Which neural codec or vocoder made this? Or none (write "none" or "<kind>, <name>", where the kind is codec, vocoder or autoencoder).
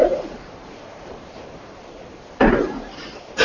vocoder, BigVGAN v2